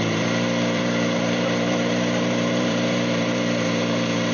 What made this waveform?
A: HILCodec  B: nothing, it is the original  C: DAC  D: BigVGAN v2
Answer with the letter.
D